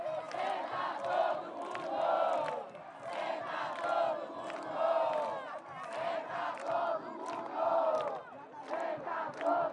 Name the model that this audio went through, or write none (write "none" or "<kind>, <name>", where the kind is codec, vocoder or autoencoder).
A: none